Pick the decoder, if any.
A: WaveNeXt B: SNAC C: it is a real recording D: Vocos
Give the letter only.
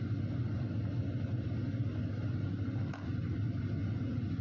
C